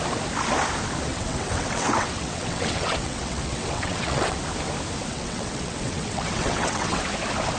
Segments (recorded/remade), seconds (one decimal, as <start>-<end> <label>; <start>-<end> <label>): 0.0-1.1 recorded; 1.1-4.4 remade; 4.4-5.1 recorded; 5.1-7.0 remade; 7.0-7.6 recorded